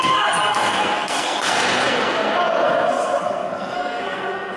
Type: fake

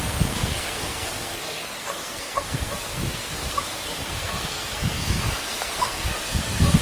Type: fake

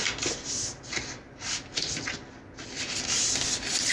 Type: real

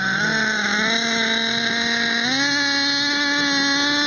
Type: real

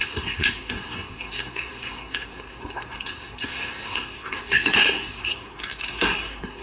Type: fake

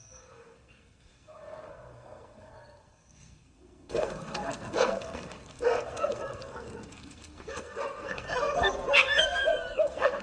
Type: fake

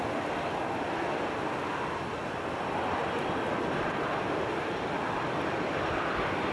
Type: real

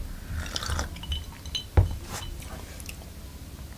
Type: real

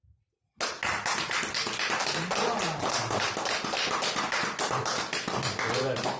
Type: real